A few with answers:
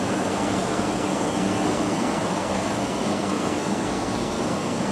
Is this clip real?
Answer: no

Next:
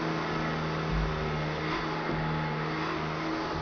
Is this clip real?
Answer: yes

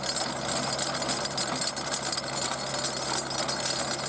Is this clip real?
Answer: yes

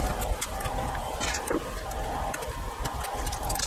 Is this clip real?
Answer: yes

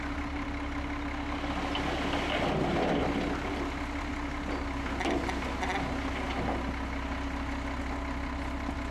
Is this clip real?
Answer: yes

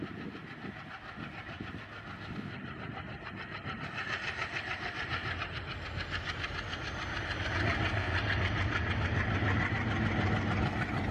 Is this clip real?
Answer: yes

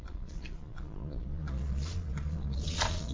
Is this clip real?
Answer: no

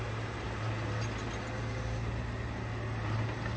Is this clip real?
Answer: yes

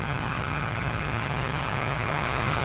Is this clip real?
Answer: no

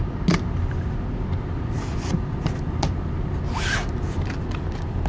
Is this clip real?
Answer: yes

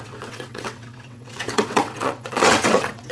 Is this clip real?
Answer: no